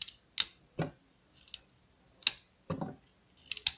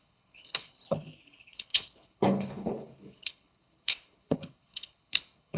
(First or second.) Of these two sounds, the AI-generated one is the second